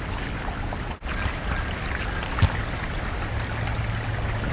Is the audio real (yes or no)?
yes